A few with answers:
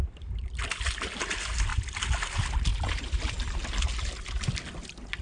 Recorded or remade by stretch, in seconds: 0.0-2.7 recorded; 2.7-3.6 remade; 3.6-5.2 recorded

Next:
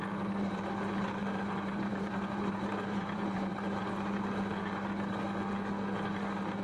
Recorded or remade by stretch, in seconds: 0.0-1.2 recorded; 1.2-3.8 remade; 3.8-6.6 recorded